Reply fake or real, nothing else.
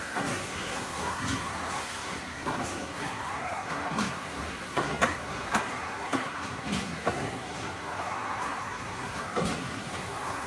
fake